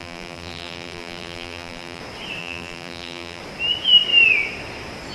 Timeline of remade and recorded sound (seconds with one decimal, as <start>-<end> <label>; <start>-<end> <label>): 0.0-2.0 remade; 2.0-2.4 recorded; 2.4-3.4 remade; 3.4-5.1 recorded